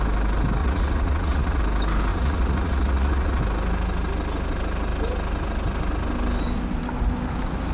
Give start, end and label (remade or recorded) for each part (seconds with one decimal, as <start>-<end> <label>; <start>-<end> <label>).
0.0-0.6 recorded; 0.6-1.6 remade; 1.6-2.1 recorded; 2.1-3.4 remade; 3.4-7.7 recorded